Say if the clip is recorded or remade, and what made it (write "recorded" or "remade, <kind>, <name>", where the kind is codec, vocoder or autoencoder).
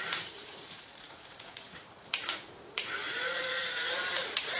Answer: remade, vocoder, Vocos